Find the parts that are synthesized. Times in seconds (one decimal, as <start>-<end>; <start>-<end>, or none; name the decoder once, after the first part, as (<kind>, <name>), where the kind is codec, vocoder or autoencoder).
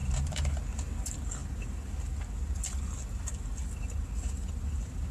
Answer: 0.0-0.6 (vocoder, BigVGAN v2)